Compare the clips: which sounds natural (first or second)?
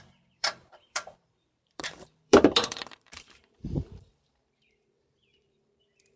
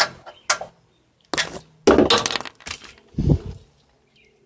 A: second